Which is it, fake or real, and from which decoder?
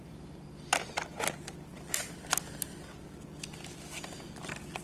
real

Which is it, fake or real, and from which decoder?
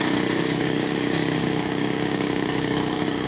fake, codec, DAC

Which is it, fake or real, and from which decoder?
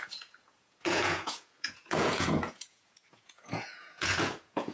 fake, vocoder, Vocos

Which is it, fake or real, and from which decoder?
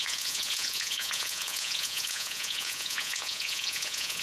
fake, vocoder, Vocos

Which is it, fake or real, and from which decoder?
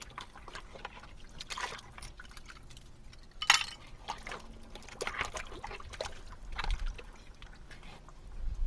real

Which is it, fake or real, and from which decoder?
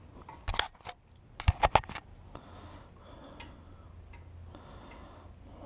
real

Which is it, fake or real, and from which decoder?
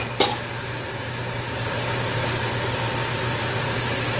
real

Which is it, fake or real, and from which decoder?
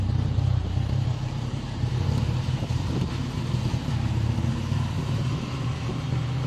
fake, vocoder, BigVGAN v2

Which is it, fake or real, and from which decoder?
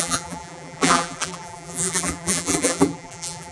fake, vocoder, BigVGAN v2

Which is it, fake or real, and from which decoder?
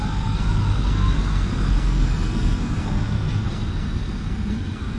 fake, codec, SNAC